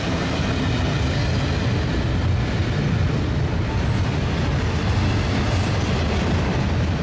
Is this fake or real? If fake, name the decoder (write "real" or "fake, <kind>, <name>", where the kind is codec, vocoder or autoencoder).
real